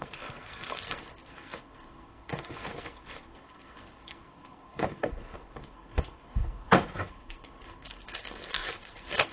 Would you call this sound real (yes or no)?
no